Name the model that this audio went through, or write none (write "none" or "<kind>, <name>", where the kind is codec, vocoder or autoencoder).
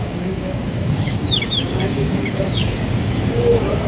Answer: codec, DAC